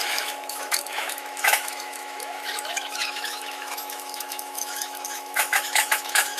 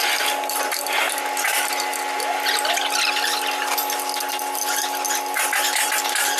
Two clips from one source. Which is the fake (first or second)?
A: first